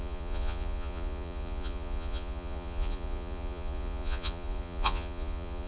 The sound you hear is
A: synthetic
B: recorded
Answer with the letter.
A